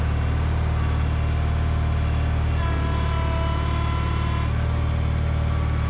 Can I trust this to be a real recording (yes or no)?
yes